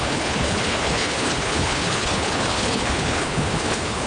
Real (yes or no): no